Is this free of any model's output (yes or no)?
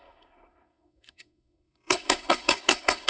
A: no